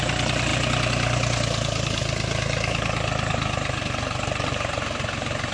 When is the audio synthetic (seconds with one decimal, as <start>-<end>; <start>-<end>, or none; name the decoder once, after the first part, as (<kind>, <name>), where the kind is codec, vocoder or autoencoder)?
0.0-0.5 (vocoder, BigVGAN v2); 3.8-5.5